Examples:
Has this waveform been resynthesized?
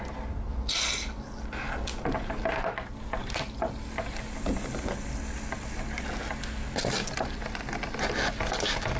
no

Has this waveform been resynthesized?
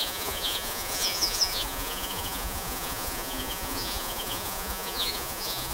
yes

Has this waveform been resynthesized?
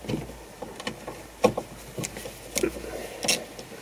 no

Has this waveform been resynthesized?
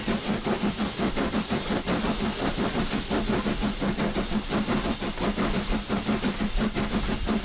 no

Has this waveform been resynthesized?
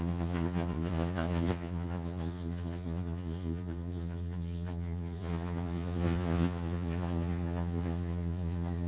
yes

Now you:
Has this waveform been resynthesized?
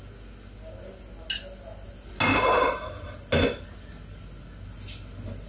no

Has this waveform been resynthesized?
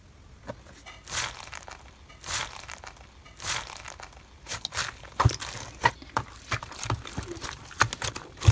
no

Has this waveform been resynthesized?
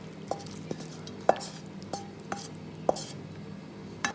no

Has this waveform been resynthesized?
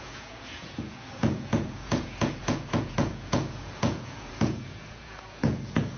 yes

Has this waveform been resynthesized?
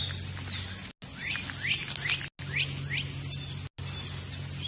no